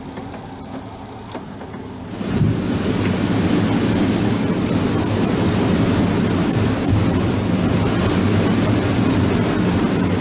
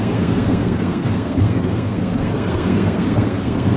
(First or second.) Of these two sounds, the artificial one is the second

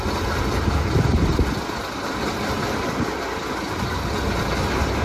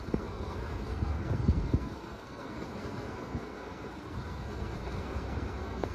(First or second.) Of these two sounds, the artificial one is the second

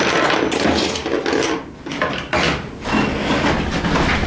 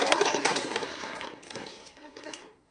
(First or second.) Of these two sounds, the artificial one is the second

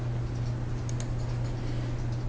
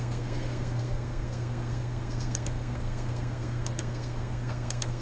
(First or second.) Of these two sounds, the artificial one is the second